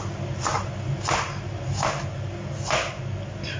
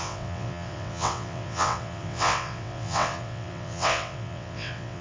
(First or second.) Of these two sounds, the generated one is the second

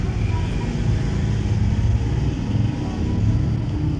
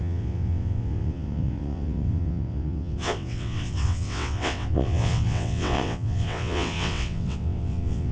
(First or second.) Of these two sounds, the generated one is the second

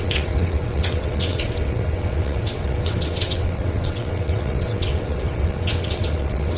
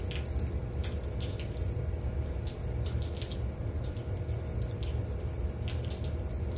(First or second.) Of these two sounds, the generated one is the first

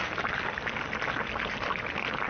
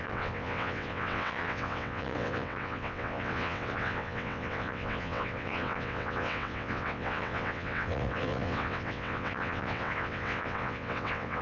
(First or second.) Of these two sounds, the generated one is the second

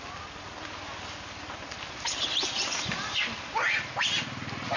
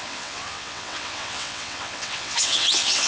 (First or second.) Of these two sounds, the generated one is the second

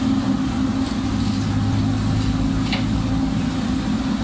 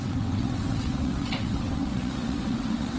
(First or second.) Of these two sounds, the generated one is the second